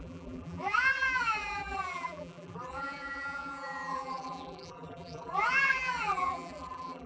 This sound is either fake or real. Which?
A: fake